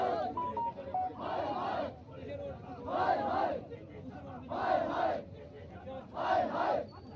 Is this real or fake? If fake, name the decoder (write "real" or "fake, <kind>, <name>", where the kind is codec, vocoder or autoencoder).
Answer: real